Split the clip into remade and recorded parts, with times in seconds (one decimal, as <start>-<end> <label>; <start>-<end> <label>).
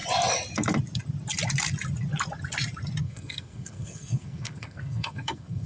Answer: 0.0-3.0 recorded; 3.0-5.7 remade